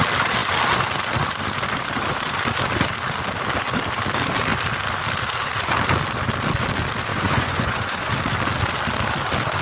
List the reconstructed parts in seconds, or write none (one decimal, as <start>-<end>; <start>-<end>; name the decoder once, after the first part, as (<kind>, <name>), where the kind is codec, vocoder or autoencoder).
7.1-8.1 (vocoder, Vocos)